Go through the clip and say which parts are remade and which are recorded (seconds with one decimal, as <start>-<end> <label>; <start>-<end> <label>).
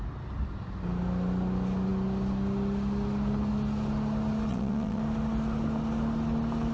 0.0-4.5 recorded; 4.5-5.0 remade; 5.0-6.7 recorded